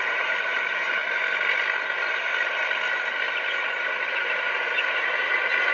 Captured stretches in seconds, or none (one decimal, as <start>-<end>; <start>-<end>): 1.0-4.3